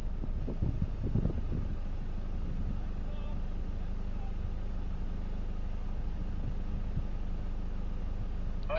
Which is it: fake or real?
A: real